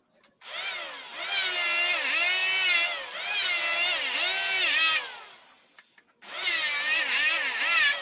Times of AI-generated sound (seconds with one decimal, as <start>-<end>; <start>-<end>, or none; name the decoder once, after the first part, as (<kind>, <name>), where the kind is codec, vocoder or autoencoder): none